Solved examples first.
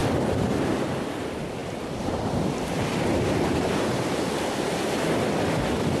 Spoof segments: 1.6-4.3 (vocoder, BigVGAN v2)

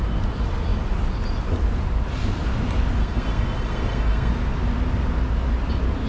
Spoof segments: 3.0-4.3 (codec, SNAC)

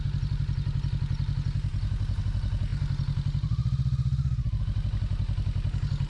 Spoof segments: none

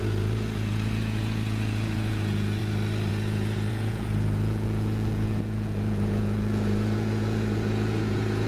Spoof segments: 0.0-2.6 (vocoder, Vocos); 3.1-8.5

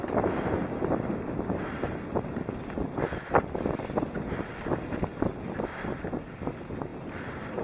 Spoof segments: none

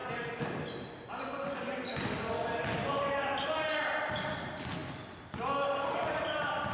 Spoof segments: none